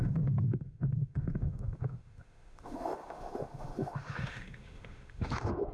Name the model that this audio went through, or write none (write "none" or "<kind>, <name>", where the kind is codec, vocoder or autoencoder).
autoencoder, DAC-VAE